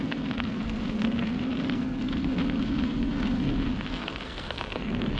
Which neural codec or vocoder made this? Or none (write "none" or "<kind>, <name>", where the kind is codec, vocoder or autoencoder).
codec, SNAC